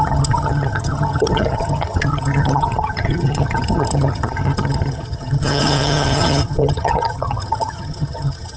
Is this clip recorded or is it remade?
remade